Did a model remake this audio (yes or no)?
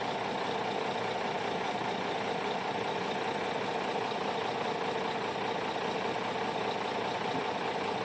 no